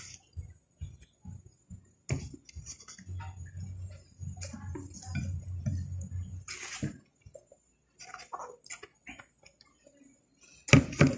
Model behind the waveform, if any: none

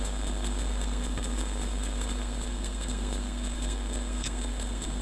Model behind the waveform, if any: codec, SNAC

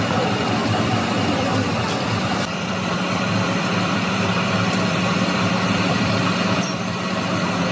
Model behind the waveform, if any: vocoder, BigVGAN v2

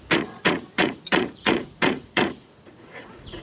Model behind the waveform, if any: vocoder, Vocos